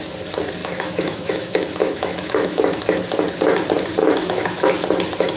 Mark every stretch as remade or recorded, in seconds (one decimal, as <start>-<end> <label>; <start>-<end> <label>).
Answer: 0.0-0.6 recorded; 0.6-2.8 remade; 2.8-4.0 recorded; 4.0-4.7 remade; 4.7-5.4 recorded